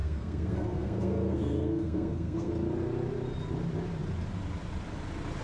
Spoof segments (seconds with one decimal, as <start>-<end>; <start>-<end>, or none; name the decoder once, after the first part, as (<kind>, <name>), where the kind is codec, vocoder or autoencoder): 0.0-2.5 (codec, SNAC)